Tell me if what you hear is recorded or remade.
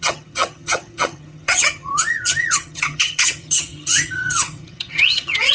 remade